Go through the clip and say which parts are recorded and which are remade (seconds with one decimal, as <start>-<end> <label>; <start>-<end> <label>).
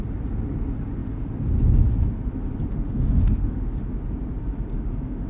0.0-2.7 recorded; 2.7-3.9 remade; 3.9-4.7 recorded; 4.7-5.3 remade